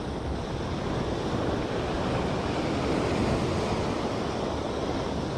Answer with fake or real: real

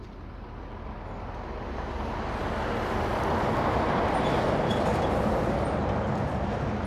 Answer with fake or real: real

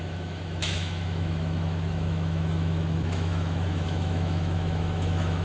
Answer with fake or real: fake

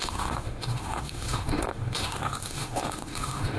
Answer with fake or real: fake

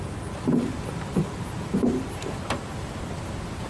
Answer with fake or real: real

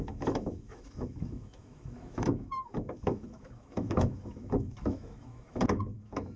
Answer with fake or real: fake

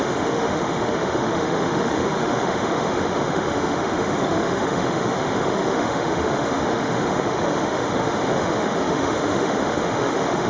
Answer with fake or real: fake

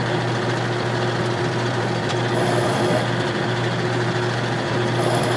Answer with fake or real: real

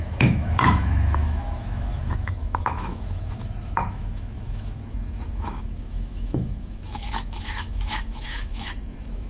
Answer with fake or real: fake